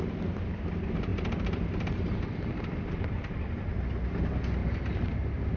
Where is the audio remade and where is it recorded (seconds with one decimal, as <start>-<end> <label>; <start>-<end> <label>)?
0.0-1.1 recorded; 1.1-3.7 remade; 3.7-4.6 recorded; 4.6-5.6 remade